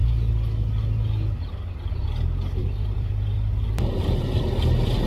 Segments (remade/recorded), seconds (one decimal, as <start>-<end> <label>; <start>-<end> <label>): 0.0-2.6 recorded; 2.6-4.4 remade; 4.4-5.1 recorded

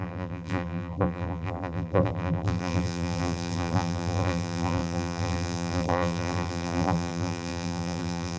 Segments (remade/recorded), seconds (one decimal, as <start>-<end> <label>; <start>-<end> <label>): 0.0-8.4 remade